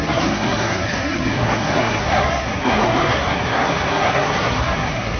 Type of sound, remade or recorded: remade